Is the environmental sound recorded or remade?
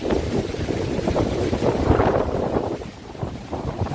remade